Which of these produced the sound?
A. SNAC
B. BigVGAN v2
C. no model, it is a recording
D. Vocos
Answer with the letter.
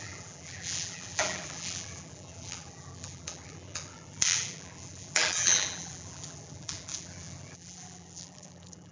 B